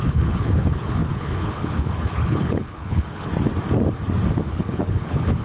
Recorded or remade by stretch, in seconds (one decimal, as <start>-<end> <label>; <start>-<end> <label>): 0.0-3.3 remade; 3.3-4.5 recorded; 4.5-5.4 remade